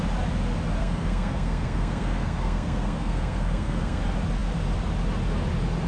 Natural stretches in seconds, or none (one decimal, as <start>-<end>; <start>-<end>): 0.0-0.8; 4.0-5.9